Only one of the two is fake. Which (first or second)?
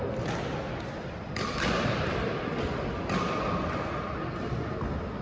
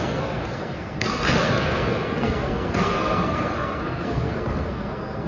second